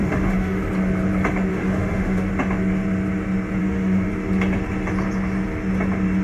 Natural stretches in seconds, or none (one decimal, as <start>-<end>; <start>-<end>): 0.6-1.5; 2.3-3.6; 4.1-6.2